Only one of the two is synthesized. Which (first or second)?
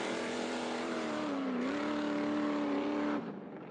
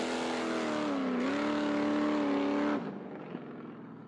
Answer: first